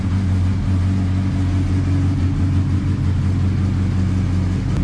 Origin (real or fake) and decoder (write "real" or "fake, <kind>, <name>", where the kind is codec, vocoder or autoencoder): real